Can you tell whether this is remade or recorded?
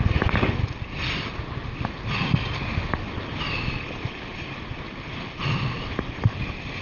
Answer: recorded